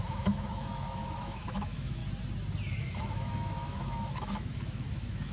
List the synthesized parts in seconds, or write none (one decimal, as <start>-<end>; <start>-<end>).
0.0-2.0; 2.8-5.3